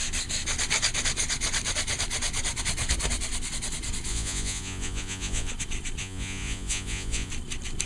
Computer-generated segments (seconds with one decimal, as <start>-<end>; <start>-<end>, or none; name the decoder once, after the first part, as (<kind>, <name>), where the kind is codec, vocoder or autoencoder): 4.1-5.5 (vocoder, Vocos); 6.0-7.3